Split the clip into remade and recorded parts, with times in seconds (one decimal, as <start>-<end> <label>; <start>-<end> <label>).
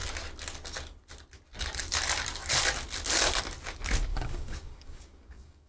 0.0-4.1 recorded; 4.1-5.7 remade